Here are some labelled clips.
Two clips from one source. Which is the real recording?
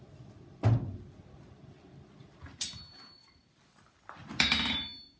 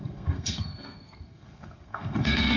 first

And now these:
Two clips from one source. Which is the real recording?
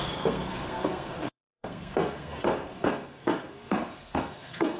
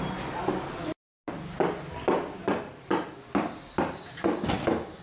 second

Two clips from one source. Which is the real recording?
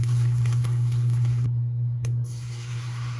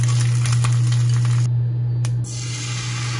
second